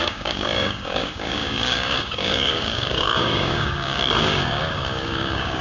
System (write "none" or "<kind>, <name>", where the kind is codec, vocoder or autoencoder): codec, DAC